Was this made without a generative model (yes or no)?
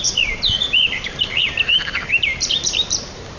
no